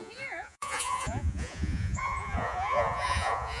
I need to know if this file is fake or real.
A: fake